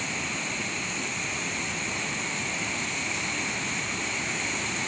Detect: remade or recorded recorded